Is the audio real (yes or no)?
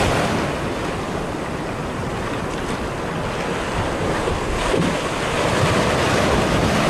yes